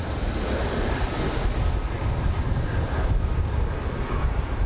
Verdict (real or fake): real